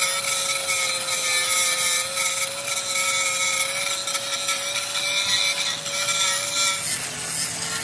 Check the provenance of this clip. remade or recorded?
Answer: recorded